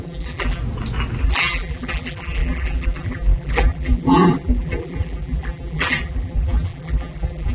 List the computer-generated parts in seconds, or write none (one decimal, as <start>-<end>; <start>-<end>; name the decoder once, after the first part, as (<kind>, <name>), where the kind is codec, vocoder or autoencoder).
0.0-0.6 (vocoder, BigVGAN v2); 1.2-7.5